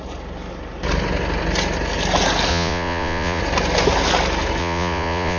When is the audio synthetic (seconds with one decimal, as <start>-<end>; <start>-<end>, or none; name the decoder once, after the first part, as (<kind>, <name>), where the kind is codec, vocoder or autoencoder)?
2.5-3.4 (vocoder, Vocos); 4.6-5.4